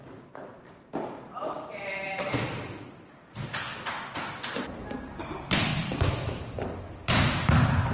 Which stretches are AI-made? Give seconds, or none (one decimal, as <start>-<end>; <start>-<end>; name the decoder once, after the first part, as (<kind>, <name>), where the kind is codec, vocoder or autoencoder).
0.0-4.4 (vocoder, BigVGAN v2); 5.7-6.7